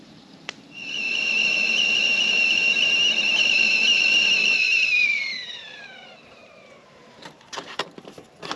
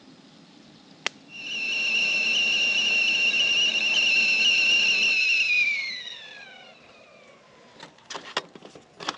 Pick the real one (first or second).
second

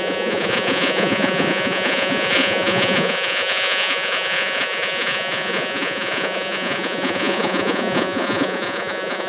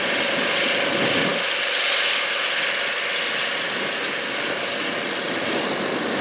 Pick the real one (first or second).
second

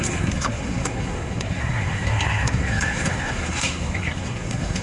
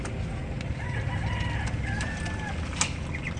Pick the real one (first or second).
second